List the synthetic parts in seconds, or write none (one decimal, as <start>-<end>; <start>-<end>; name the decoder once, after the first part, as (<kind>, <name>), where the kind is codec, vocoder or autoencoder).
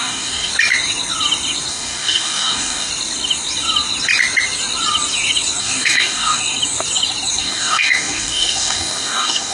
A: 0.0-0.5 (codec, DAC); 1.7-2.9; 5.6-6.4; 7.4-9.5